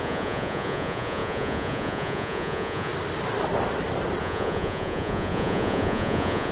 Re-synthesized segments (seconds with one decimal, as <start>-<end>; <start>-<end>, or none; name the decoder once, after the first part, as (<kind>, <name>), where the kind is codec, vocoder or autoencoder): 0.0-2.9 (vocoder, Vocos); 4.2-6.5

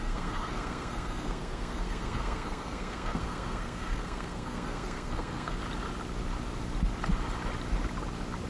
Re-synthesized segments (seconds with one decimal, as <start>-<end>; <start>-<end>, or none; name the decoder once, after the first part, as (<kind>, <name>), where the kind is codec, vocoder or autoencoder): 0.0-5.6 (codec, SNAC)

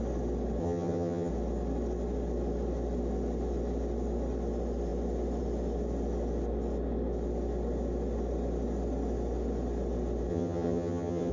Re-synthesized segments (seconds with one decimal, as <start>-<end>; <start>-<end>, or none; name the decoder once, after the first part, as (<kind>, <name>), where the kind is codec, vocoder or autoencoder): 0.6-1.3 (vocoder, HiFi-GAN); 10.3-11.3

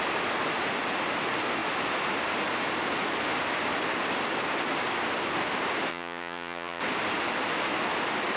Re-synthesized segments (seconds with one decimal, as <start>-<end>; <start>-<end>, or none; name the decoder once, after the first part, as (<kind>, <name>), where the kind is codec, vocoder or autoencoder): 5.9-6.8 (vocoder, HiFi-GAN)

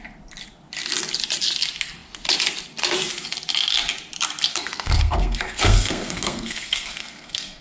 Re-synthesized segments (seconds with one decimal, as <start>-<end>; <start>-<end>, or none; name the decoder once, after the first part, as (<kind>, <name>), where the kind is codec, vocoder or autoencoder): 4.5-7.6 (codec, SNAC)

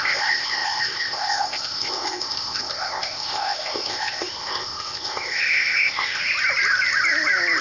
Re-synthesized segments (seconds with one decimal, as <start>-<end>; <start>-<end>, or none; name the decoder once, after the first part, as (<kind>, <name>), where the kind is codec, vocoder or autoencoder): 0.0-6.2 (codec, ZipCodec)

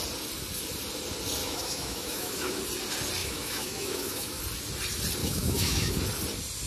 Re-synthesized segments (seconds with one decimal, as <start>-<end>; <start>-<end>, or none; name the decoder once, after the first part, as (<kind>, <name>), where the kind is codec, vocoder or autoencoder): 1.4-2.6 (autoencoder, DAC-VAE); 3.2-4.4; 5.2-6.0

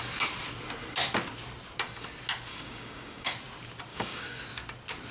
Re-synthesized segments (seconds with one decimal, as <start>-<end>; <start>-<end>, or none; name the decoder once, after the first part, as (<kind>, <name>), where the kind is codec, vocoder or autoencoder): 2.5-3.3 (codec, DAC); 3.9-4.4